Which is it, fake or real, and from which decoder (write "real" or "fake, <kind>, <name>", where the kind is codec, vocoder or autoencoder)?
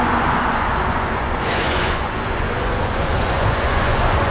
fake, vocoder, Vocos